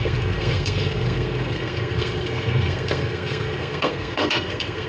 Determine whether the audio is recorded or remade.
remade